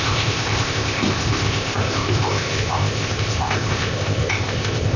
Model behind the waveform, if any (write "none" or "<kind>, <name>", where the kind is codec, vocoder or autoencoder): codec, ZipCodec